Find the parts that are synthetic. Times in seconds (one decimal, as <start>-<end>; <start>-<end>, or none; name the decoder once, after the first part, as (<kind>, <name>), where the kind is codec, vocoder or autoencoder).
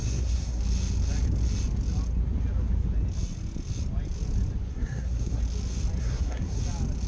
0.0-0.6 (codec, SNAC); 4.7-5.4; 6.0-6.6